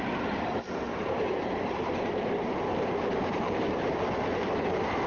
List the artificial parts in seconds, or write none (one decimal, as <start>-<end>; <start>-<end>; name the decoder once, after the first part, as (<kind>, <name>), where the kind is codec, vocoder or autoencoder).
0.9-4.0 (vocoder, BigVGAN v2)